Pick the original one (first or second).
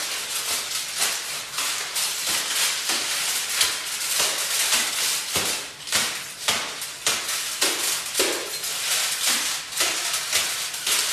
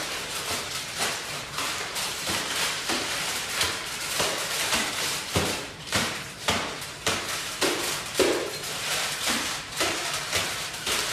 first